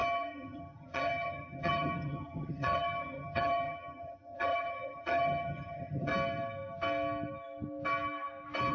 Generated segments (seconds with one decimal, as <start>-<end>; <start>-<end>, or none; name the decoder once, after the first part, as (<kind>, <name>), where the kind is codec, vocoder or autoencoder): 0.0-6.1 (vocoder, HiFi-GAN)